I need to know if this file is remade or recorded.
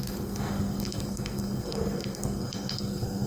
remade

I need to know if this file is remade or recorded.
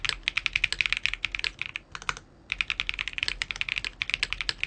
recorded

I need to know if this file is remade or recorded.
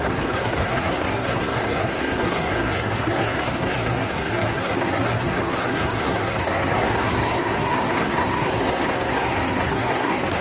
remade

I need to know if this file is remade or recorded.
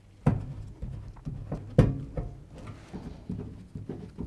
recorded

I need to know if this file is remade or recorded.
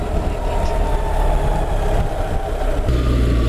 recorded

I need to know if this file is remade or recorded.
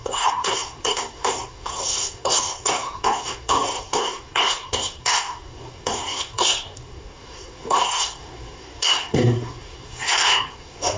remade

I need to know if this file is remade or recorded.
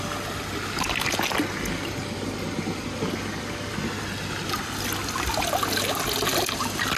recorded